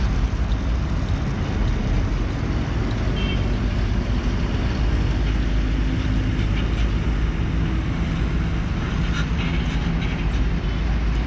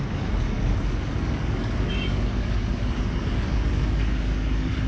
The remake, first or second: second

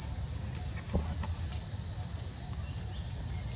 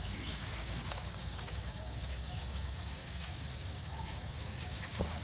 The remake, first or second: second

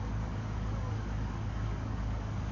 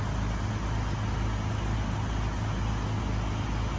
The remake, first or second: first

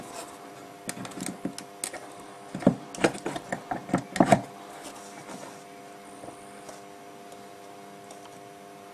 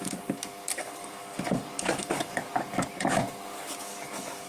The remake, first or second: second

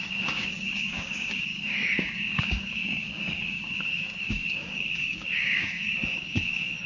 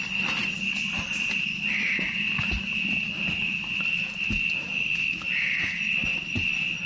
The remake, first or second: first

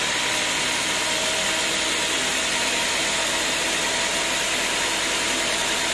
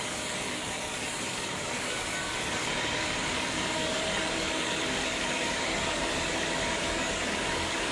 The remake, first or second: second